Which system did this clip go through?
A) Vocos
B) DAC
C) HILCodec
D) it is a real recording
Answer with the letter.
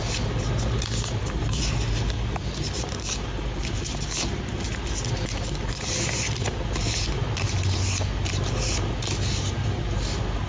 D